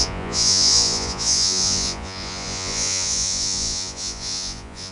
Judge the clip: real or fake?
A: fake